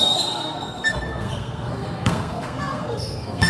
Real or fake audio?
fake